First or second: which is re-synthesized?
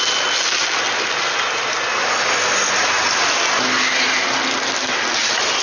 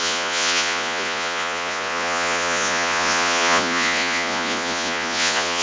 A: second